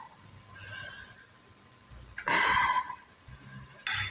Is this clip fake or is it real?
real